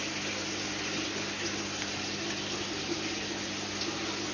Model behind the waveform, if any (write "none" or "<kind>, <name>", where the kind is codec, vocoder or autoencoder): none